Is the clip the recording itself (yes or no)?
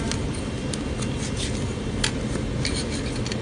yes